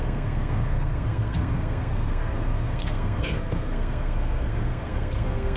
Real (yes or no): no